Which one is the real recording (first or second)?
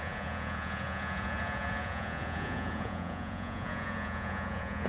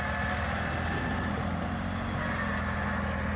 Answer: second